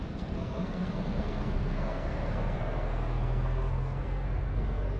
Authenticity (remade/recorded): remade